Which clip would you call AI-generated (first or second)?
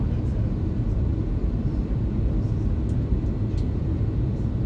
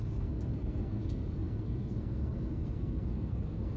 second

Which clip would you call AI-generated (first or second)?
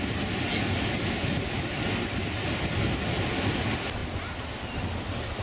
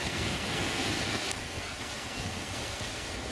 second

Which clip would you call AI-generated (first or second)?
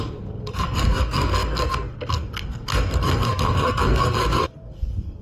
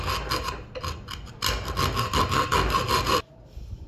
first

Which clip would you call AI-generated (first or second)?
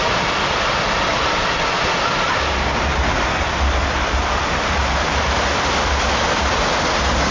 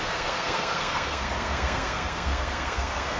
second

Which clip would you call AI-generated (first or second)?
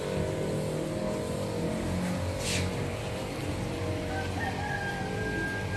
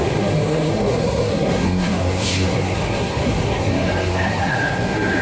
second